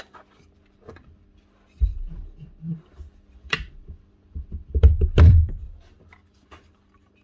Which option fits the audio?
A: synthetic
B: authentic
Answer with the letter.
A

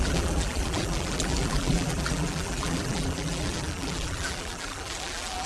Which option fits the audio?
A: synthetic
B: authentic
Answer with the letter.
A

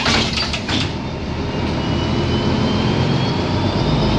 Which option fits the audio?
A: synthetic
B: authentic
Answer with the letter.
A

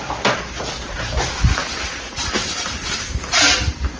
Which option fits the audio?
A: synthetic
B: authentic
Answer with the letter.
B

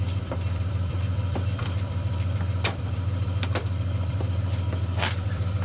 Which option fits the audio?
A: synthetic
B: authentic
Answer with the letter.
A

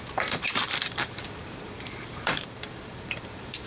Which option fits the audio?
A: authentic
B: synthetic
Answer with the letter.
B